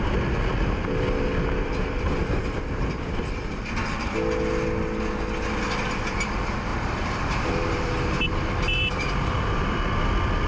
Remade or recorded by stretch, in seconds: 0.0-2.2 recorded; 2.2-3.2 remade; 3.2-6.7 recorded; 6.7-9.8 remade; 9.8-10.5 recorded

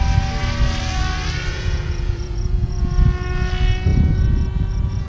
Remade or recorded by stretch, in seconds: 0.0-1.5 recorded; 1.5-2.9 remade; 2.9-3.9 recorded; 3.9-5.1 remade

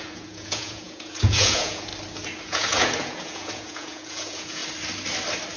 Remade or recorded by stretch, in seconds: 0.0-1.9 remade; 1.9-2.4 recorded; 2.4-4.6 remade; 4.6-5.6 recorded

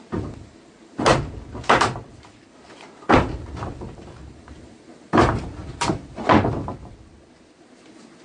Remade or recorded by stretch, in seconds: 0.0-1.1 recorded; 1.1-4.6 remade; 4.6-5.6 recorded; 5.6-7.6 remade; 7.6-8.2 recorded